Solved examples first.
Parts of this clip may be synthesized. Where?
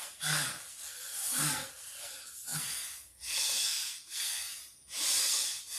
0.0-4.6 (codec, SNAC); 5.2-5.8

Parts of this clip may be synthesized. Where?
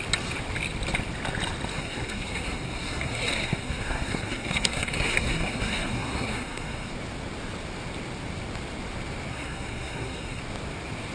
1.7-6.9 (codec, SNAC); 9.3-10.4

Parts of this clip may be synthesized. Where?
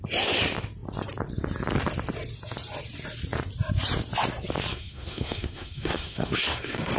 4.7-7.0 (codec, SNAC)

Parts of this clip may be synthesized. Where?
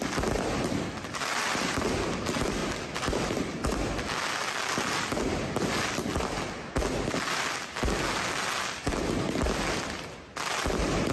none